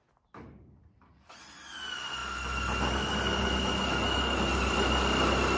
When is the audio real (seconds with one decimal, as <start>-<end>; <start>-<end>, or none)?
0.0-5.6